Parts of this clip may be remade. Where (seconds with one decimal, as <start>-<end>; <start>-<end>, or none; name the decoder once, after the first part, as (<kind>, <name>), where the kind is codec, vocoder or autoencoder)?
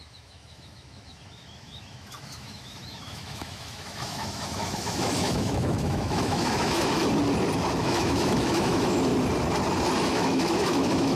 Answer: 0.0-7.0 (autoencoder, DAC-VAE); 7.8-9.1; 10.1-11.2